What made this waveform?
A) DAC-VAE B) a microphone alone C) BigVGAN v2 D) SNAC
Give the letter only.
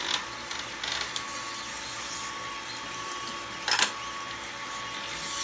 B